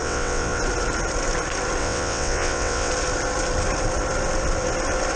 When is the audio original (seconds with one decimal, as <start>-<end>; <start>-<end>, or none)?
0.6-1.8; 2.9-5.2